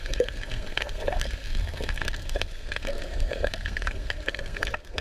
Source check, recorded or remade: remade